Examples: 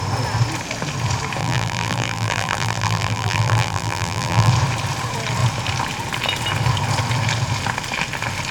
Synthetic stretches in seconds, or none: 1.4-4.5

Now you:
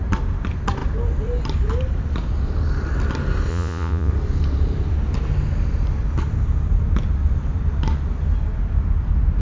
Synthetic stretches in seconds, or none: 3.5-4.1